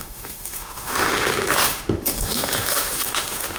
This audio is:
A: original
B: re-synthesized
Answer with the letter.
B